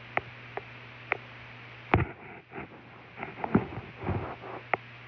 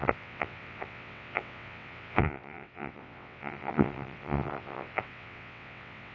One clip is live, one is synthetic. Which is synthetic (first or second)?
second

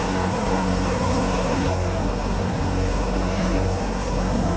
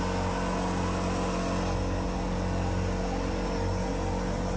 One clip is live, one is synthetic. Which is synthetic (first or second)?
first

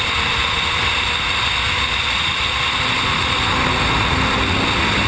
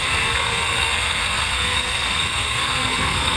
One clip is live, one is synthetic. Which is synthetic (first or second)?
second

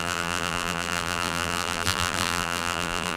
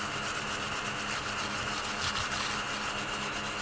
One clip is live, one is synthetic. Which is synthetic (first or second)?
first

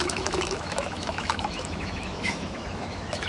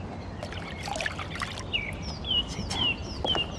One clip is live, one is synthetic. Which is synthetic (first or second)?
first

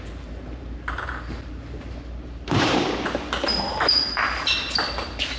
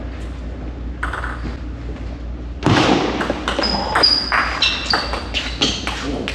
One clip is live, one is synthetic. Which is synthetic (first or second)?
first